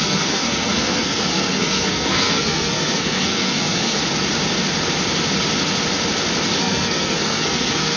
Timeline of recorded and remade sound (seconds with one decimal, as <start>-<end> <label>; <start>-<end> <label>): 0.0-4.0 remade; 4.0-6.6 recorded; 6.6-8.0 remade